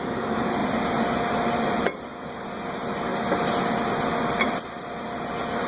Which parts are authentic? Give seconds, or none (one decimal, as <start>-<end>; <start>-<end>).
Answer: 0.0-5.7